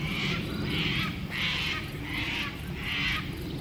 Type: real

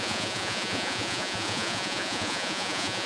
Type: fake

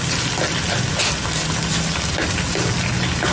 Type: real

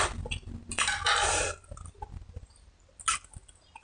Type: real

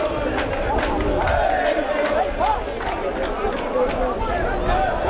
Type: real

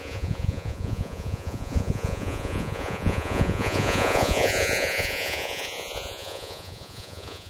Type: fake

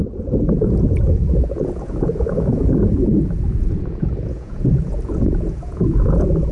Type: fake